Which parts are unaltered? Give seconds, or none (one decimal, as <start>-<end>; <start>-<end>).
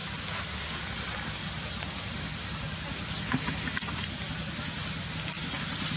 0.0-6.0